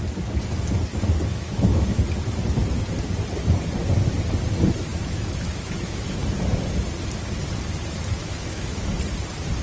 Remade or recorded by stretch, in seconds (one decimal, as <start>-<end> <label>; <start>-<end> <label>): 0.0-1.3 recorded; 1.3-2.0 remade; 2.0-4.9 recorded; 4.9-6.2 remade; 6.2-8.2 recorded; 8.2-8.9 remade; 8.9-9.6 recorded